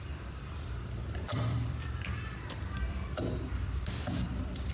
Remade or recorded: remade